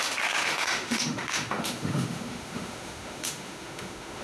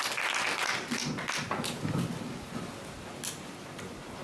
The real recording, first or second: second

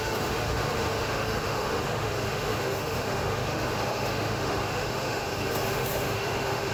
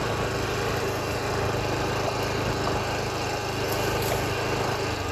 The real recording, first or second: second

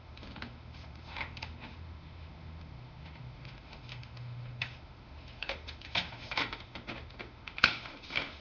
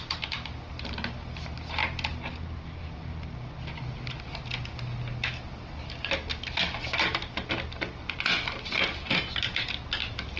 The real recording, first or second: second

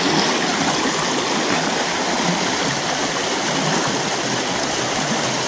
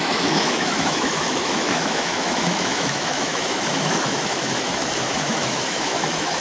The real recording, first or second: first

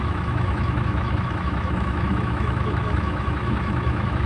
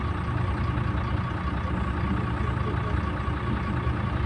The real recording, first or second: second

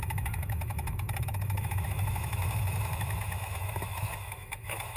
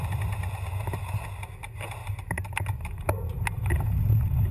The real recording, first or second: second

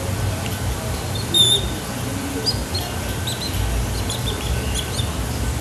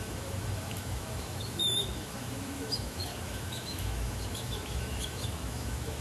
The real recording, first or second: first